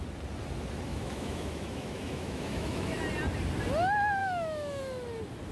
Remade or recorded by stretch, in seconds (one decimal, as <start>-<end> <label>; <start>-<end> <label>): 0.0-0.9 recorded; 0.9-3.0 remade; 3.0-4.2 recorded; 4.2-4.8 remade; 4.8-5.5 recorded